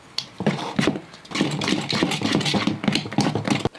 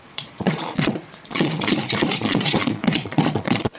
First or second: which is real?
first